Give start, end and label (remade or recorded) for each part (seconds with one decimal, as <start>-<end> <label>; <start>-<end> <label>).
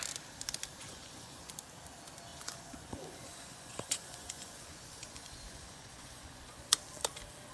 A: 0.0-0.8 recorded; 0.8-1.5 remade; 1.5-2.3 recorded; 2.3-6.8 remade; 6.8-7.5 recorded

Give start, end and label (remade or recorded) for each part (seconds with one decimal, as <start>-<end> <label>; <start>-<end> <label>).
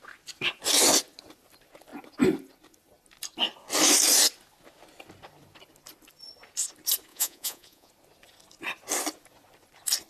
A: 0.0-7.1 recorded; 7.1-7.9 remade; 7.9-10.1 recorded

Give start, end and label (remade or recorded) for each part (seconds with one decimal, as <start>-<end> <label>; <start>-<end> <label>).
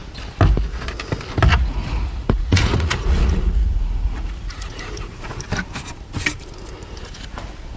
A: 0.0-1.5 recorded; 1.5-5.4 remade; 5.4-7.8 recorded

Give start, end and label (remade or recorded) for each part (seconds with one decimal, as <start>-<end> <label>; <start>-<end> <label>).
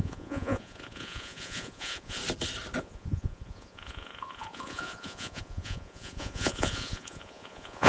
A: 0.0-2.2 remade; 2.2-2.8 recorded; 2.8-7.9 remade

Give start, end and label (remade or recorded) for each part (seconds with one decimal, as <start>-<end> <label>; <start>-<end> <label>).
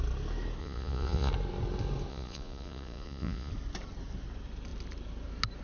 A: 0.0-0.6 recorded; 0.6-1.3 remade; 1.3-2.1 recorded; 2.1-3.5 remade; 3.5-5.6 recorded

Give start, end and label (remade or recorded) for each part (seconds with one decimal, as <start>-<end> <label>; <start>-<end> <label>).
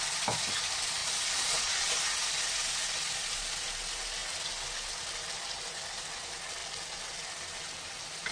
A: 0.0-1.0 recorded; 1.0-2.0 remade; 2.0-8.3 recorded